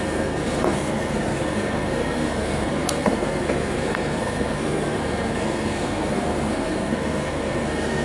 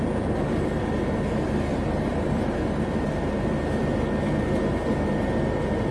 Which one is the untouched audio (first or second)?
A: second